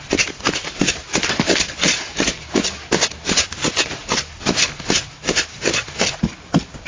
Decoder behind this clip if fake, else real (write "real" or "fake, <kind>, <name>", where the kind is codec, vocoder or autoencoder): real